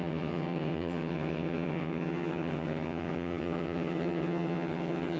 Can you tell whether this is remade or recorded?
remade